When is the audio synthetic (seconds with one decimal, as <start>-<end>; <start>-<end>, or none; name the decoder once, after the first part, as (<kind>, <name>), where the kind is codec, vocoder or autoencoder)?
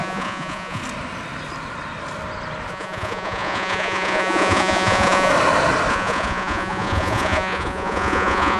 0.0-0.8 (vocoder, Vocos); 2.7-5.3; 5.9-8.6